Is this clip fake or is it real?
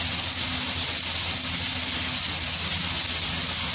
real